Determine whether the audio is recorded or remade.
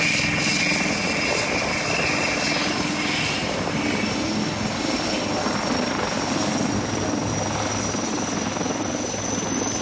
recorded